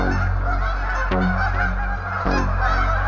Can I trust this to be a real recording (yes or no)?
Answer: yes